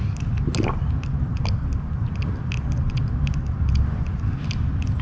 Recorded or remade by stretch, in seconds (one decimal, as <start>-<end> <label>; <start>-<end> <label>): 0.0-5.0 recorded